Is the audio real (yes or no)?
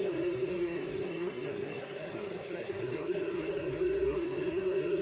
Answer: no